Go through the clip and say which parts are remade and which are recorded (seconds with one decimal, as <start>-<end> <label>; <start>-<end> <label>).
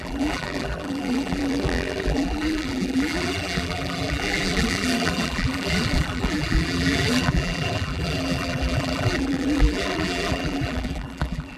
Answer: 0.0-11.6 remade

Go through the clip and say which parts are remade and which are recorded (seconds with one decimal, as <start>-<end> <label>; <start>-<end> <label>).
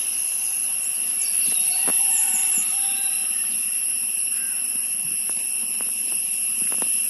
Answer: 0.0-7.1 recorded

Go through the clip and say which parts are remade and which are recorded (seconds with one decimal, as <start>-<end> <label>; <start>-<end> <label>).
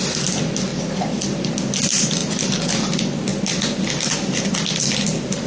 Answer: 0.0-0.7 recorded; 0.7-1.5 remade; 1.5-2.2 recorded; 2.2-2.7 remade; 2.7-5.5 recorded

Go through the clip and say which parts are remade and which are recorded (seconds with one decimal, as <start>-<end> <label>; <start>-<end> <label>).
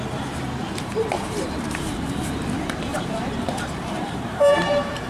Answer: 0.0-0.6 recorded; 0.6-2.2 remade; 2.2-2.9 recorded; 2.9-5.1 remade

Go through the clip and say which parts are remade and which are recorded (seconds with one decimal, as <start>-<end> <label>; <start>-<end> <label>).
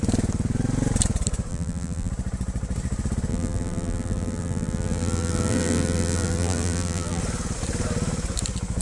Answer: 0.0-1.5 recorded; 1.5-2.1 remade; 2.1-3.3 recorded; 3.3-7.2 remade; 7.2-8.8 recorded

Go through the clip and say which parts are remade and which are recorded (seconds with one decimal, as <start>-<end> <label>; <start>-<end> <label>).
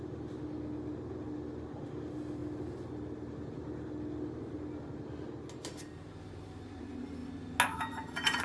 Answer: 0.0-8.4 recorded